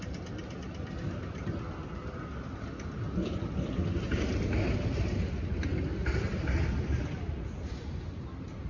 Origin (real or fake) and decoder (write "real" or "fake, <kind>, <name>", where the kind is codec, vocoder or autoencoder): real